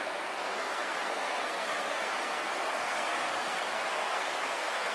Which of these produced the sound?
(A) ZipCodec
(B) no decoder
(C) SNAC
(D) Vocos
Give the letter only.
C